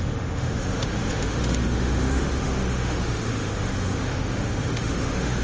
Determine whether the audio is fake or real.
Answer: fake